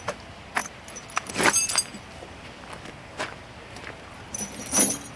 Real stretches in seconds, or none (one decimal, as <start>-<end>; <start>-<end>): 0.0-5.2

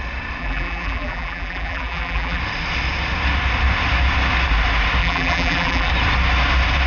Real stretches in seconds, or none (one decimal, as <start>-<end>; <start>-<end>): 0.0-0.4; 2.4-5.0; 5.9-6.9

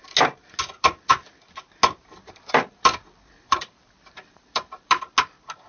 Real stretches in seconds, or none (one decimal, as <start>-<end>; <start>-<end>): 0.0-2.0; 4.9-5.7

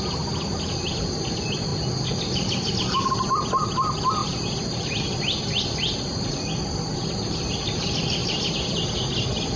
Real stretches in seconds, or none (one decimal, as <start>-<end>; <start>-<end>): 0.0-9.6

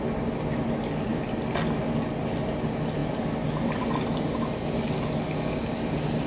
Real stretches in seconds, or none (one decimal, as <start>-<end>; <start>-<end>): 0.0-6.3